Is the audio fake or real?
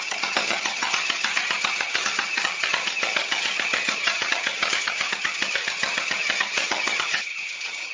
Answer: fake